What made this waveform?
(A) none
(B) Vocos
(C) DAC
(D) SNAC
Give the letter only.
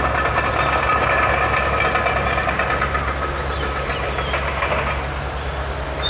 A